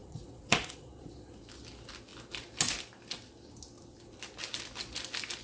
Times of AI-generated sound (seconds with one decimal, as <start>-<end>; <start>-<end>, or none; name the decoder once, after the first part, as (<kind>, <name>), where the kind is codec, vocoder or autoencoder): 0.0-1.4 (vocoder, Vocos)

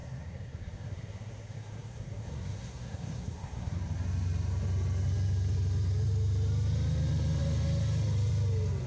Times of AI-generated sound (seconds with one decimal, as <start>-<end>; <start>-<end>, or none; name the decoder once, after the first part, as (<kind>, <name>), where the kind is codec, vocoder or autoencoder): 0.0-3.8 (codec, SNAC)

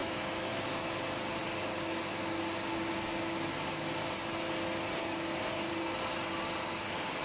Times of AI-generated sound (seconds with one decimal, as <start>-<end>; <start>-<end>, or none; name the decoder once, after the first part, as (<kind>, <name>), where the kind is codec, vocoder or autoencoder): 0.0-0.9 (autoencoder, DAC-VAE)

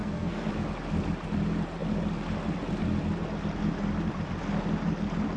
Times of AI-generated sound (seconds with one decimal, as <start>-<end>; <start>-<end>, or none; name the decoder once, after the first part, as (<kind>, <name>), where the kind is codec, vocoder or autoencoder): 0.0-0.5 (codec, SNAC)

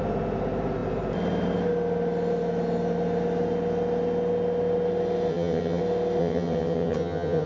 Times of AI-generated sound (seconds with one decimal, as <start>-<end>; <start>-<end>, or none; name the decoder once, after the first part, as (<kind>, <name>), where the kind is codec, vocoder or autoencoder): 5.3-5.8 (vocoder, HiFi-GAN); 6.2-7.5

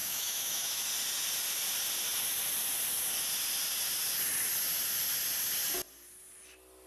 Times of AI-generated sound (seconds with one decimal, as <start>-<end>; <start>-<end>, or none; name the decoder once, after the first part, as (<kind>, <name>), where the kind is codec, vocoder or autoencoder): 0.0-0.9 (autoencoder, DAC-VAE)

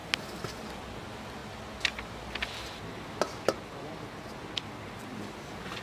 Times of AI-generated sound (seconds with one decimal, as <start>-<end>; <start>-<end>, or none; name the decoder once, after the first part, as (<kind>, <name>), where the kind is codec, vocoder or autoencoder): none

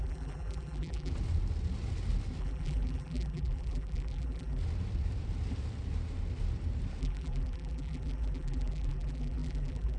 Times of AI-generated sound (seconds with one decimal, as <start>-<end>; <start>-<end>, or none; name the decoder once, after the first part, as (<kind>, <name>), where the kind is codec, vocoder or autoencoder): 0.0-1.1 (vocoder, BigVGAN v2); 2.4-4.6; 7.0-10.0